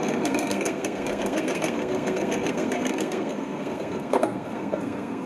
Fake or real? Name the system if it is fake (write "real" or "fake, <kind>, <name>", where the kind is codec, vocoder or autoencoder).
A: fake, codec, SNAC